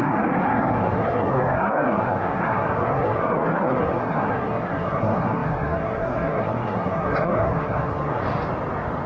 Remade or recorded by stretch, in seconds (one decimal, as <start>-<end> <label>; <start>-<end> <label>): 0.0-8.2 remade; 8.2-9.1 recorded